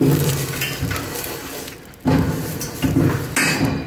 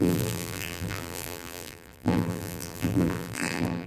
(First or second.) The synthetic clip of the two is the second